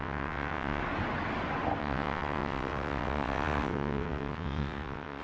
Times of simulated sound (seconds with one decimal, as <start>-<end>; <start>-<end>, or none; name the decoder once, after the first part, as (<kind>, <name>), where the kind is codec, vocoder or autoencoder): 0.0-0.8 (vocoder, WaveNeXt); 1.8-5.2